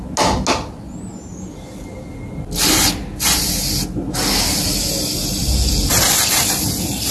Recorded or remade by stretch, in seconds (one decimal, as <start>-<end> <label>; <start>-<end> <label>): 0.0-7.1 recorded

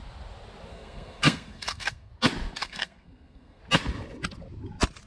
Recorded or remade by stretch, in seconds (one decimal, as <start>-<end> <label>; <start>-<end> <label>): 0.0-0.7 recorded; 0.7-2.1 remade; 2.1-2.6 recorded; 2.6-3.6 remade; 3.6-5.1 recorded

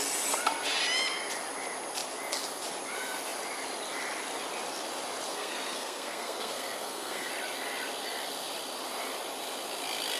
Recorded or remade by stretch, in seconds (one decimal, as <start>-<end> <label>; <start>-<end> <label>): 0.0-5.3 recorded; 5.3-7.3 remade; 7.3-10.2 recorded

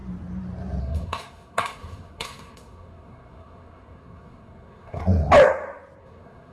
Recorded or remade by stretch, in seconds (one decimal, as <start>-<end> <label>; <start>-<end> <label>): 0.0-0.8 recorded; 0.8-5.0 remade; 5.0-6.0 recorded; 6.0-6.5 remade

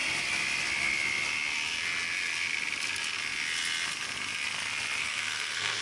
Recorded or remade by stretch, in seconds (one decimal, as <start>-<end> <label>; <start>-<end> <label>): 0.0-5.0 recorded; 5.0-5.8 remade

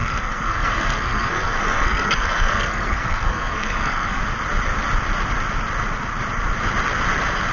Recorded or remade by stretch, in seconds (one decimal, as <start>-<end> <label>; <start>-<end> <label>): 0.0-4.2 remade; 4.2-7.5 recorded

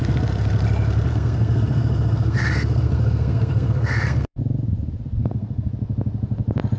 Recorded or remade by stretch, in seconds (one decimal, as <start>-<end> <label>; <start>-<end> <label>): 0.0-1.1 recorded; 1.1-4.4 remade; 4.4-5.2 recorded; 5.2-5.7 remade; 5.7-6.8 recorded

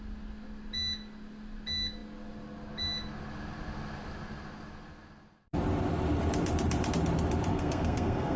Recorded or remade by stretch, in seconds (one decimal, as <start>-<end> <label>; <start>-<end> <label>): 0.0-7.5 recorded; 7.5-8.4 remade